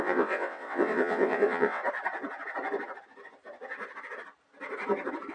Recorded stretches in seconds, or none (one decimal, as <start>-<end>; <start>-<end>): 1.8-5.3